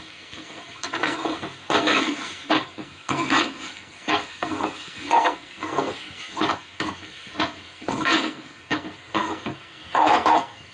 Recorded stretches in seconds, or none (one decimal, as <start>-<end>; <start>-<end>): none